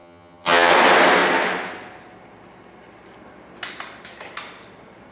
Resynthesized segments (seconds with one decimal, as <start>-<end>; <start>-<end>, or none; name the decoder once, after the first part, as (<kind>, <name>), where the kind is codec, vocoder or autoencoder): 0.0-0.7 (vocoder, HiFi-GAN)